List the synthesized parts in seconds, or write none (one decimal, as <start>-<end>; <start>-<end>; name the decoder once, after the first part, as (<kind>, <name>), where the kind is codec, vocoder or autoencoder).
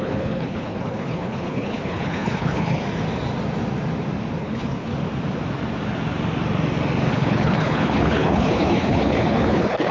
0.0-2.8 (codec, HILCodec); 4.4-4.9; 7.1-9.9